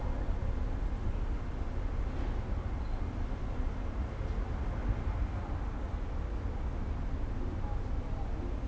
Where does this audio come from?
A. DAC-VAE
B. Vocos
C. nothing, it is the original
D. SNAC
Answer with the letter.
C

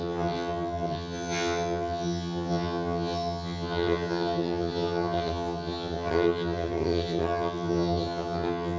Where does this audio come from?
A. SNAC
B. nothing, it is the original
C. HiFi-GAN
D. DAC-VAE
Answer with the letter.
C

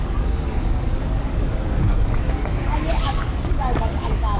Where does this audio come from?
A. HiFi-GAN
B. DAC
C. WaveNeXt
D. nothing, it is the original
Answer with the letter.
B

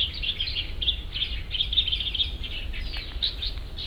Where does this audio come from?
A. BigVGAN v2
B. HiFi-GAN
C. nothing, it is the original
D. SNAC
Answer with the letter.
C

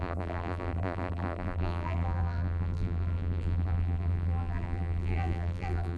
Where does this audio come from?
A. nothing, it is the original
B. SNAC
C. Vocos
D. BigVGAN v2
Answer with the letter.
D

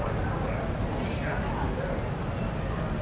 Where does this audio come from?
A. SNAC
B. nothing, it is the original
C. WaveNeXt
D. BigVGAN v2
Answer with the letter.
B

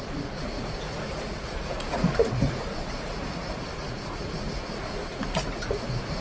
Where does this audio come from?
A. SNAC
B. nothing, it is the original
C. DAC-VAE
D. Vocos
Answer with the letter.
D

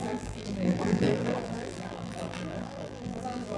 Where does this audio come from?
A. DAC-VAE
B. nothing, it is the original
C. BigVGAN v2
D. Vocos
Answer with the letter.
C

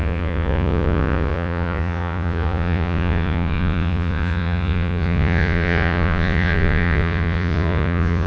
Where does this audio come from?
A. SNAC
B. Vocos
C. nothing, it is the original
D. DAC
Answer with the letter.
B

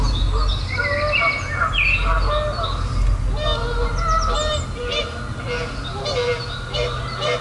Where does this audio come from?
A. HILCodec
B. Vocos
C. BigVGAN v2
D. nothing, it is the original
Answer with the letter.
D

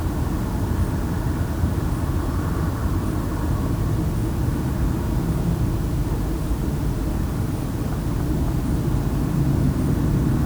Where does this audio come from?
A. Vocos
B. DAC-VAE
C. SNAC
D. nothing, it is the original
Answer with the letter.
D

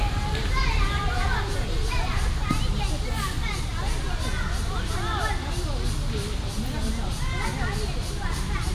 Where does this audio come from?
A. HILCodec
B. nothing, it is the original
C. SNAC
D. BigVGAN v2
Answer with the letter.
B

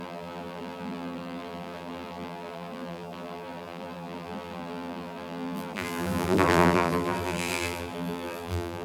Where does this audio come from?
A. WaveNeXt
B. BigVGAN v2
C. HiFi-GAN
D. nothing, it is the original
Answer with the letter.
B